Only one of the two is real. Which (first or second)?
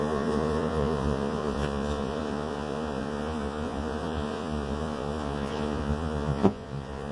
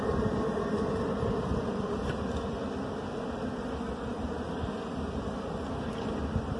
second